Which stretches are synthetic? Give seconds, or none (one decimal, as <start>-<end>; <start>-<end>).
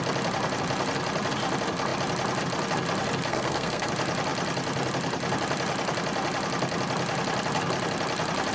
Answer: 3.3-3.9